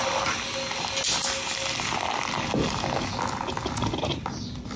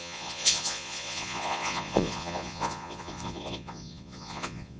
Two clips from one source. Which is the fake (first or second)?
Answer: second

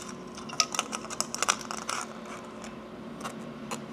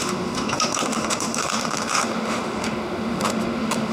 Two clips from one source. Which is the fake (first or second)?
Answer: second